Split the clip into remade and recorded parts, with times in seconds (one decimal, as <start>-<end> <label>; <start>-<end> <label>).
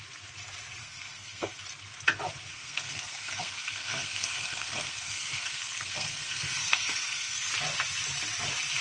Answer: 0.0-0.8 recorded; 0.8-1.6 remade; 1.6-2.5 recorded; 2.5-7.5 remade; 7.5-8.8 recorded